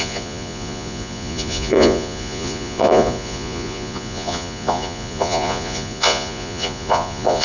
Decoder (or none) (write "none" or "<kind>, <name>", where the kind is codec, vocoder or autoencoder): vocoder, Vocos